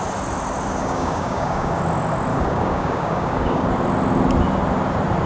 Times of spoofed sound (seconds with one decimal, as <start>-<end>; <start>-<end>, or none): 0.8-1.8; 2.3-3.7